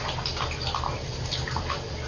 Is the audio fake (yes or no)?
no